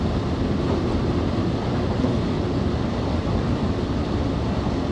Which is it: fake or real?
real